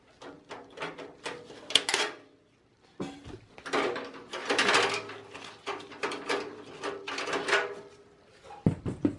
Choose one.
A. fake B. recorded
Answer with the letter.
B